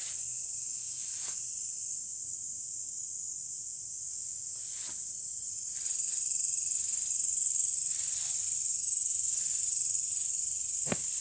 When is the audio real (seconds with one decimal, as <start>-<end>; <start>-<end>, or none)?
0.0-0.6; 1.4-8.7; 9.4-11.2